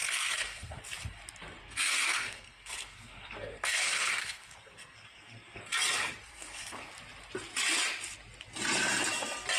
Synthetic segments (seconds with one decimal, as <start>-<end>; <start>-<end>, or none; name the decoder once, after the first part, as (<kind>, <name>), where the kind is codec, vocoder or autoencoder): 0.0-0.8 (codec, SNAC); 1.6-5.6; 6.3-6.9